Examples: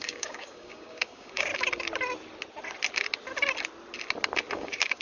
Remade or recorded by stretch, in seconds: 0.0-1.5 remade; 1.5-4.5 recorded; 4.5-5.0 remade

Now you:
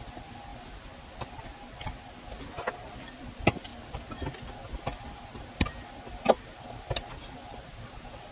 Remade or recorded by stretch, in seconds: 0.0-8.3 recorded

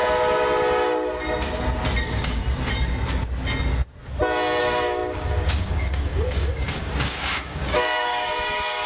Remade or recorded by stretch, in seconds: 0.0-2.0 recorded; 2.0-2.4 remade; 2.4-4.6 recorded; 4.6-8.9 remade

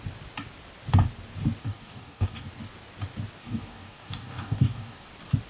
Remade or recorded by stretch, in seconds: 0.0-1.6 recorded; 1.6-2.5 remade; 2.5-3.4 recorded; 3.4-5.1 remade; 5.1-5.5 recorded

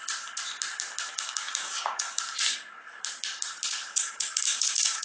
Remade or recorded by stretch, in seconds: 0.0-1.1 recorded; 1.1-2.2 remade; 2.2-3.9 recorded; 3.9-5.0 remade